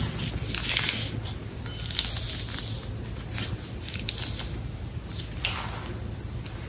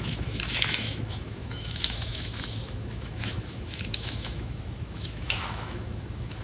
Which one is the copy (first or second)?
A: second